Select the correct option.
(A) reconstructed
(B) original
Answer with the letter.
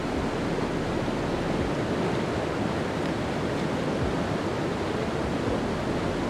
B